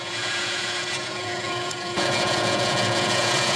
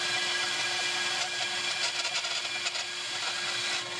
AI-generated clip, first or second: first